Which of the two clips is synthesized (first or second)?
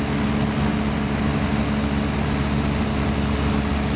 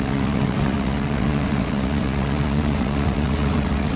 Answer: second